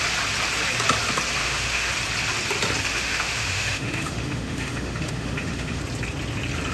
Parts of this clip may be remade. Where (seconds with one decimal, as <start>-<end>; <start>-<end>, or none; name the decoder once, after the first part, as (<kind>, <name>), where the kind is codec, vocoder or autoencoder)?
1.4-1.9 (autoencoder, DAC-VAE); 2.9-5.8